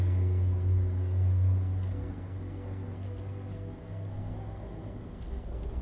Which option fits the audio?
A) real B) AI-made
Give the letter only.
B